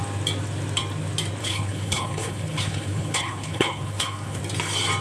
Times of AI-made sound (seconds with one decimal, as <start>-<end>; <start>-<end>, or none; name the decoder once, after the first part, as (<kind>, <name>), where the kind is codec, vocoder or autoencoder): 1.4-4.4 (codec, HILCodec)